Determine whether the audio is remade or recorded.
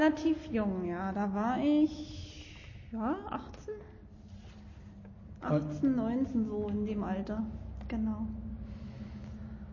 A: recorded